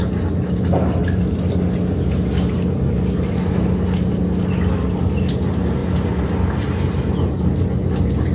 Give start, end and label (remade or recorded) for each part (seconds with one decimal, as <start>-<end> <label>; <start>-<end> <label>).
0.0-8.3 recorded